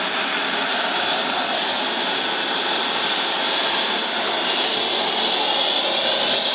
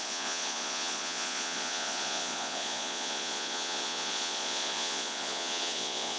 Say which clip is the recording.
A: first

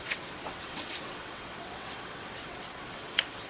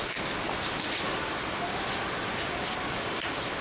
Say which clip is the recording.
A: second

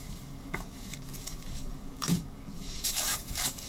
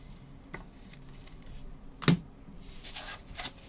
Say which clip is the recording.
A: second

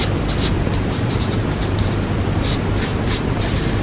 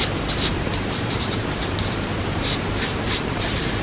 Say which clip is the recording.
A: first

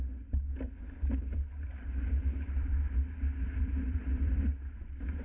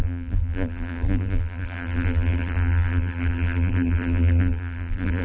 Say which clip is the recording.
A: first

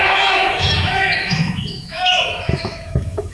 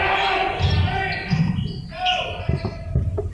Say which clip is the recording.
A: second